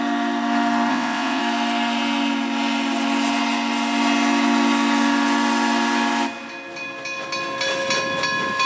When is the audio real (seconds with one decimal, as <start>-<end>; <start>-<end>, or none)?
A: 0.0-0.9; 1.4-8.7